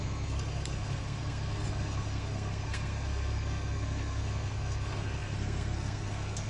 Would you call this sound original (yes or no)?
no